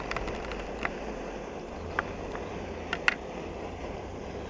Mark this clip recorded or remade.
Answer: recorded